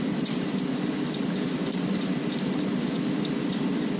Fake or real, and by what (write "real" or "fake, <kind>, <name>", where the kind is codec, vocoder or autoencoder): real